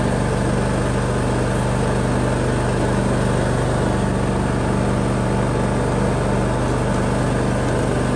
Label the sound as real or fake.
real